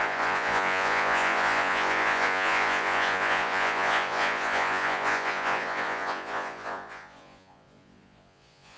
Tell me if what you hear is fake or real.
fake